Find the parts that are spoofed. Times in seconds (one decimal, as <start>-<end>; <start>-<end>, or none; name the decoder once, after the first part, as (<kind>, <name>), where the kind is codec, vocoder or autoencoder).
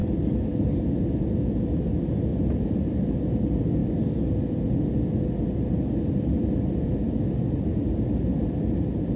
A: 0.0-1.0 (vocoder, BigVGAN v2); 2.3-3.2